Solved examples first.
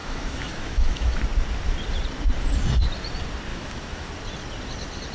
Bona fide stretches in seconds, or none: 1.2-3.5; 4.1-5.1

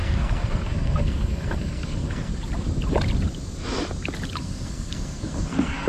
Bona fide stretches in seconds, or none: 2.3-4.4

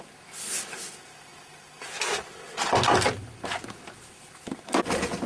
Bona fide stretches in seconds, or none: 0.0-5.3

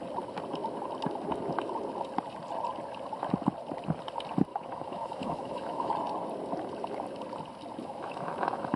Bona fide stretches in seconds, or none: 0.0-4.5; 5.9-7.8

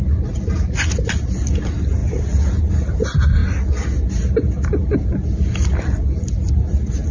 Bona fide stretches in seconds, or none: 0.0-7.1

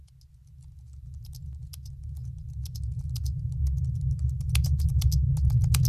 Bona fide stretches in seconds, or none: 0.0-5.9

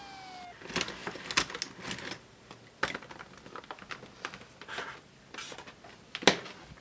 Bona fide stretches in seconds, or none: 0.0-6.8